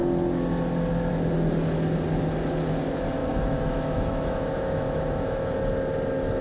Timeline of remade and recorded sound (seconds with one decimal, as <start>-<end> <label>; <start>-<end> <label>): 0.0-3.2 recorded; 3.2-5.5 remade; 5.5-6.4 recorded